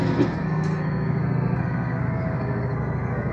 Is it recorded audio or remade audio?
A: remade